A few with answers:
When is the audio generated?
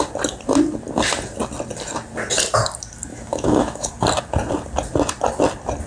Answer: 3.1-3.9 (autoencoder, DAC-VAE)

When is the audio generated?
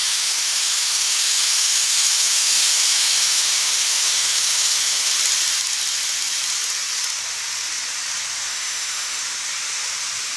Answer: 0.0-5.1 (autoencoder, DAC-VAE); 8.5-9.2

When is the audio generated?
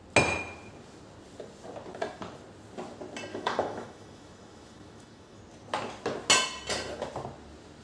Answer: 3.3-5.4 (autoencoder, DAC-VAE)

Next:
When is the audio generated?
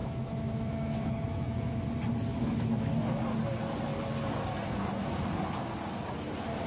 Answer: 0.0-1.8 (autoencoder, DAC-VAE); 2.3-2.9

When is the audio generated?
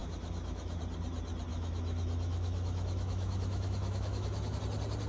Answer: 0.0-0.8 (autoencoder, DAC-VAE); 1.5-4.6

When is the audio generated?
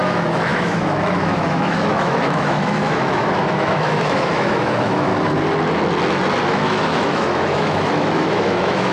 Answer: 0.0-5.1 (autoencoder, DAC-VAE); 6.5-8.9